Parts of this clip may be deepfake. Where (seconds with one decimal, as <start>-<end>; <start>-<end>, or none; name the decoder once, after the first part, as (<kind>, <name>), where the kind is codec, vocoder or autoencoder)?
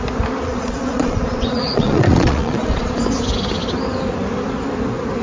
0.5-3.0 (vocoder, Vocos)